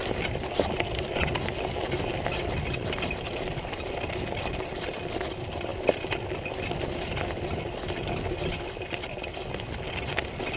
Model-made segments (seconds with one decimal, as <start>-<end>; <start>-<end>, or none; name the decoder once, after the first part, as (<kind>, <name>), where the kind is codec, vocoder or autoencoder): none